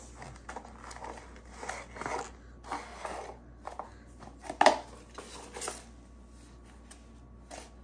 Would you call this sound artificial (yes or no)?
no